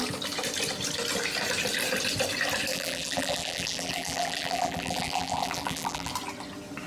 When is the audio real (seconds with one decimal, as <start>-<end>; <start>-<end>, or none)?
0.0-2.7; 6.1-6.9